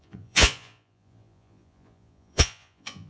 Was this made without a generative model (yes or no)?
no